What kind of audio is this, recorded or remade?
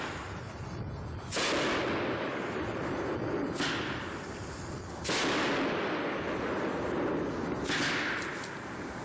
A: recorded